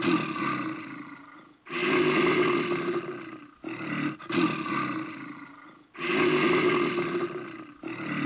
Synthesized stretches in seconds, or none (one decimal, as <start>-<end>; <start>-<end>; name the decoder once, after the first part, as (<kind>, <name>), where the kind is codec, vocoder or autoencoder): none